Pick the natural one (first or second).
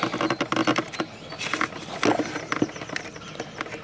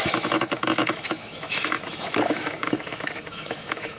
first